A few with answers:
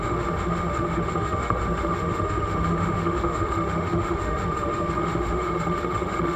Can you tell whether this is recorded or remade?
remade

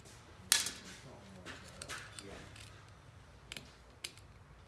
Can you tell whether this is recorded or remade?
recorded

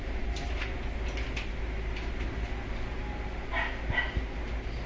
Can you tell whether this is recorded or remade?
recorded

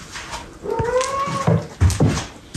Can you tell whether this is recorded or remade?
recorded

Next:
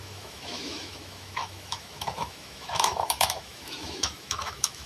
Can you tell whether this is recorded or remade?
remade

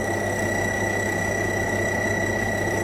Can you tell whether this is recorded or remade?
remade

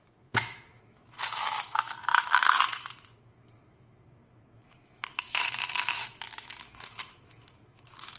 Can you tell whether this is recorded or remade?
remade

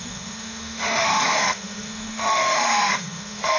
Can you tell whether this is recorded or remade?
remade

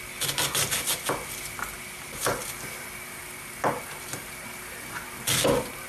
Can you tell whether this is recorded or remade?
recorded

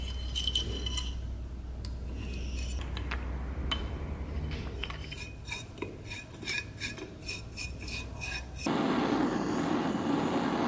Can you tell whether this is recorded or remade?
recorded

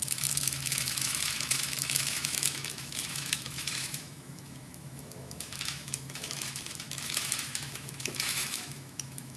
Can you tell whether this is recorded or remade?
remade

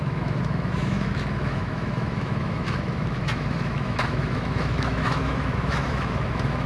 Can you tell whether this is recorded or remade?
remade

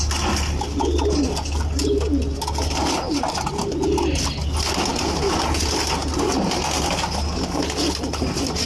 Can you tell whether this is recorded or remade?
recorded